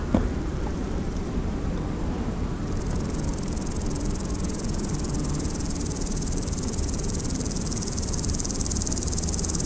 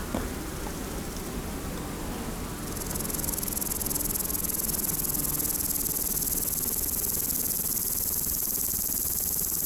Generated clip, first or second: first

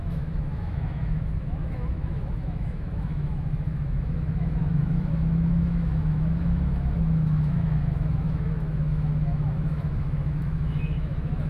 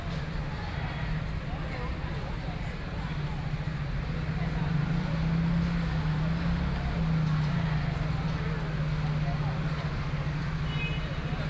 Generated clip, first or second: first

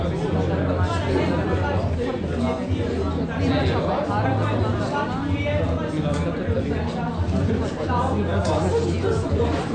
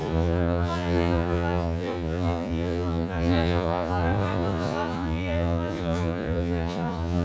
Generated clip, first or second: second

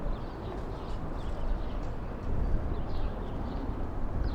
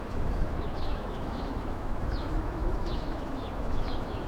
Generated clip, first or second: second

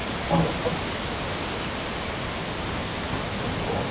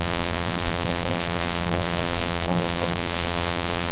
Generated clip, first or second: second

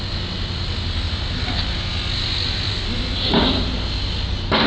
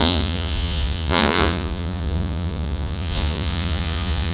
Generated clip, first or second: second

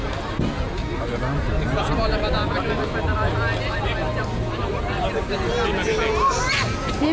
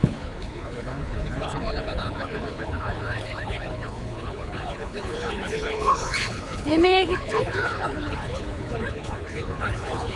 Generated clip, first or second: second